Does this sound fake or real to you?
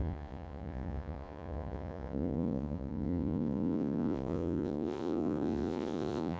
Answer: fake